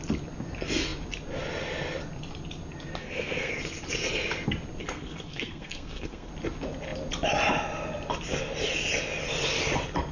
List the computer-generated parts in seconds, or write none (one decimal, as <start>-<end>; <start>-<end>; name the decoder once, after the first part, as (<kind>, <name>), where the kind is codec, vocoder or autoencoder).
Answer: 3.0-3.5 (codec, SNAC); 4.8-6.3